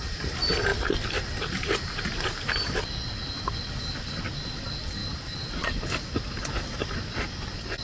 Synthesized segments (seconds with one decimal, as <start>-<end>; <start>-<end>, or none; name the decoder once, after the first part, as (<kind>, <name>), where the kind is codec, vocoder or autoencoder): 0.7-2.0 (vocoder, BigVGAN v2); 5.0-5.7